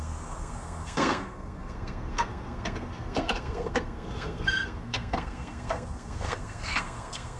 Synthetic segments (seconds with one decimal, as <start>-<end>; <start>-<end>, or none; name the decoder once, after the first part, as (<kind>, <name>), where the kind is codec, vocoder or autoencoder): 0.0-7.4 (codec, SNAC)